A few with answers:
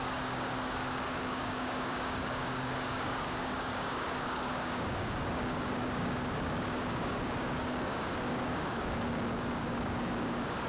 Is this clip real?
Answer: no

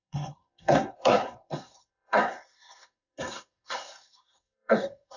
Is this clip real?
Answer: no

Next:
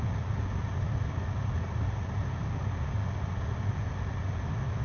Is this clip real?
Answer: yes